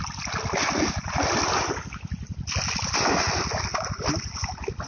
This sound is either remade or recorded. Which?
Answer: recorded